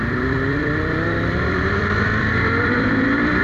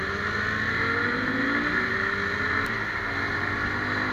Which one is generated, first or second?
first